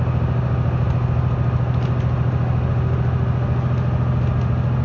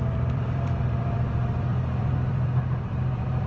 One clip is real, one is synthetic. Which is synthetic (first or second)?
second